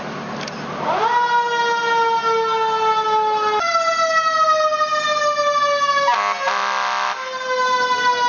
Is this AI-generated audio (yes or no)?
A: no